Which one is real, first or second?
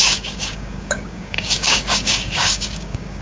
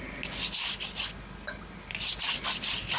second